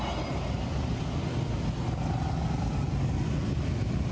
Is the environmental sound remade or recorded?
recorded